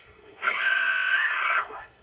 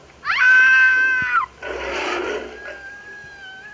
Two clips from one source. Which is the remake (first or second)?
first